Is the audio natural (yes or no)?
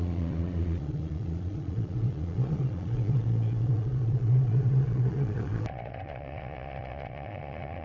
no